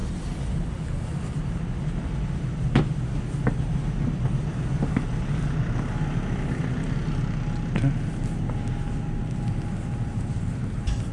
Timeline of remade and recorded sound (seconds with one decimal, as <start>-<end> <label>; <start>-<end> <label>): 0.0-11.1 recorded